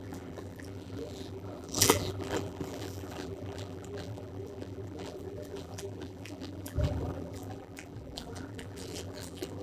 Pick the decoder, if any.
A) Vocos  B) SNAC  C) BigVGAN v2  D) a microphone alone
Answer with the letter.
C